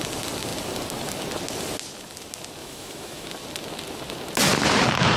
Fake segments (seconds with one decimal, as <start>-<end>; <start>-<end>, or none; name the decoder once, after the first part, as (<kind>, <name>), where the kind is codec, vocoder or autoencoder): 2.6-3.3 (autoencoder, DAC-VAE)